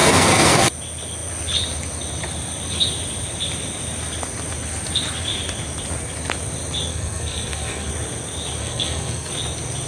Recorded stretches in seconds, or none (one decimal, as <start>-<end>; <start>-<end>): 0.7-6.9; 7.9-8.6; 9.3-9.9